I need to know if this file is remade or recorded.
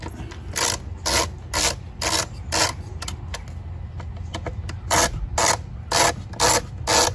recorded